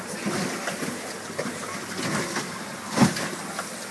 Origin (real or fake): real